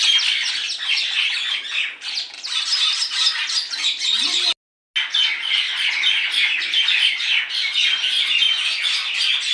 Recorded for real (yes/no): yes